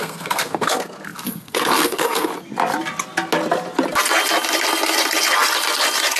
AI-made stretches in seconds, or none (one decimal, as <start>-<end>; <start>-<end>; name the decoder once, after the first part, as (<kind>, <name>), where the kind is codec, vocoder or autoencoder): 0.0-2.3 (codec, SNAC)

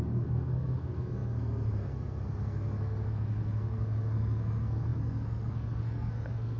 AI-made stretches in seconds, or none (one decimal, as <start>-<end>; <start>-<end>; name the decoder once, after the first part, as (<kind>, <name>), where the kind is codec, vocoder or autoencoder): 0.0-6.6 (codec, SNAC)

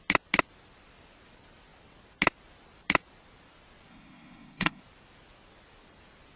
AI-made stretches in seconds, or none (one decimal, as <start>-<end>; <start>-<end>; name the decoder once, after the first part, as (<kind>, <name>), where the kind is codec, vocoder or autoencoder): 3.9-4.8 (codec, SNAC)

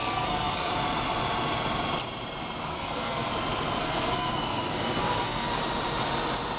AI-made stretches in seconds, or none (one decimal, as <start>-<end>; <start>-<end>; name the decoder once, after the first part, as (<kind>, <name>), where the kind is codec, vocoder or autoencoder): 0.0-0.7 (codec, SNAC); 2.7-3.3; 3.8-5.6